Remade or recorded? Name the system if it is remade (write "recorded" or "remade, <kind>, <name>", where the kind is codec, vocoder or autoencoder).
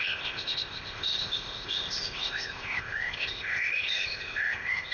remade, codec, ZipCodec